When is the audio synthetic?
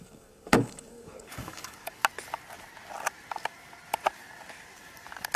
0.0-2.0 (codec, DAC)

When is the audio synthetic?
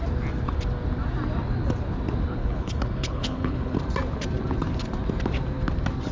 2.4-3.8 (codec, HILCodec)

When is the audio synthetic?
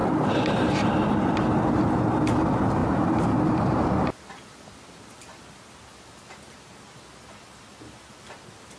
0.0-1.2 (vocoder, BigVGAN v2); 2.8-3.9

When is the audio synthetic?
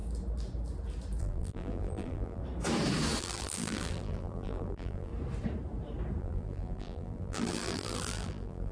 1.2-2.4 (vocoder, BigVGAN v2); 3.2-5.1; 6.2-8.7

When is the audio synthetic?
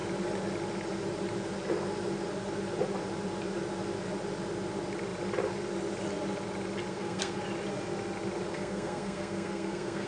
6.9-7.4 (codec, SNAC); 8.5-10.1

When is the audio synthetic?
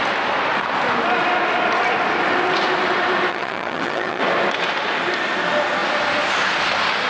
3.3-4.2 (vocoder, HiFi-GAN)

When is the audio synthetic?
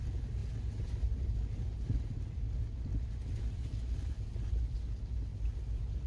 none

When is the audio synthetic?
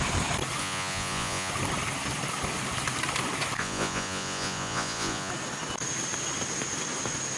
0.6-1.5 (vocoder, Vocos); 3.6-5.3